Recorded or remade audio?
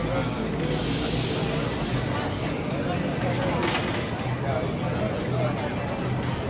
recorded